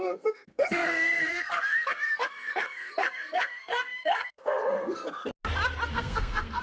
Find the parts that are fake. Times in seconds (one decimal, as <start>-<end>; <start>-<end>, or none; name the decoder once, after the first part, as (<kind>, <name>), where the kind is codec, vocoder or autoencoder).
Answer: 0.0-5.3 (codec, SNAC); 5.9-6.6